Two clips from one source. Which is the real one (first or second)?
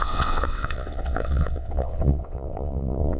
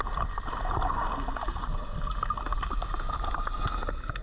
second